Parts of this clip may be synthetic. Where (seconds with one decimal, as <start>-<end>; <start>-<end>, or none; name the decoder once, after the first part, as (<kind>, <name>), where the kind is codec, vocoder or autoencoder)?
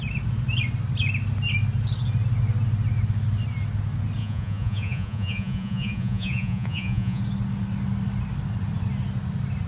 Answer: 4.2-7.2 (vocoder, Vocos)